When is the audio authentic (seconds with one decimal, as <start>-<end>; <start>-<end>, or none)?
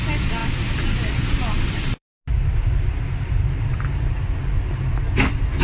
0.0-5.6